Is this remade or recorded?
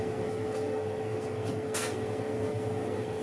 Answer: remade